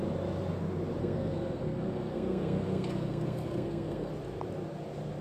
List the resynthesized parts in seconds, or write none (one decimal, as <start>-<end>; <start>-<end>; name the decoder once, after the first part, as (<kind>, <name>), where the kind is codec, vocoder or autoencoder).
1.0-4.1 (codec, SNAC)